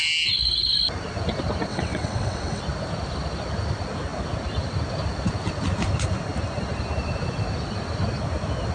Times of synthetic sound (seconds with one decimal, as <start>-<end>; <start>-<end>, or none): 1.7-2.6